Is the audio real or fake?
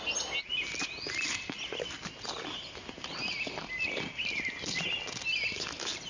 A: real